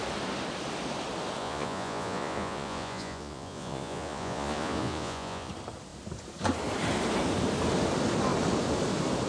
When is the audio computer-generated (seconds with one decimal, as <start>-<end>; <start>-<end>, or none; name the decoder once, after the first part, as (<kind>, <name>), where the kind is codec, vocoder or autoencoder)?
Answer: 1.4-5.5 (vocoder, Vocos)